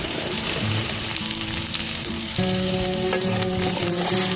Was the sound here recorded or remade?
remade